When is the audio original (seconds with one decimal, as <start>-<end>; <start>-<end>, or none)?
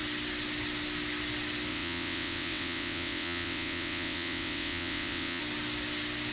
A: 0.0-1.7; 5.4-6.3